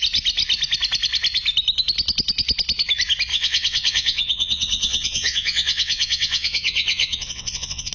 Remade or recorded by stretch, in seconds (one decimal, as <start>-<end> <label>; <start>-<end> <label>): 0.0-3.3 recorded; 3.3-7.9 remade